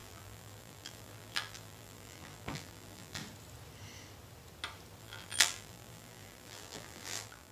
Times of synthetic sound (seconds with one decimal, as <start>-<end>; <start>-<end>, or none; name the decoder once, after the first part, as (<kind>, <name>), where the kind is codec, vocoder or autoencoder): 0.0-3.2 (vocoder, BigVGAN v2); 5.0-7.5